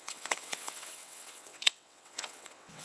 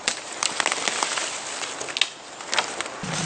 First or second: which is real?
second